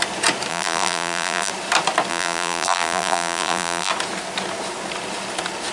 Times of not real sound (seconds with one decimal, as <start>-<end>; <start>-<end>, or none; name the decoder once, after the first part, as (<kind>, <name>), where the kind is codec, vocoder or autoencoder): 0.5-1.5 (vocoder, BigVGAN v2); 2.1-3.9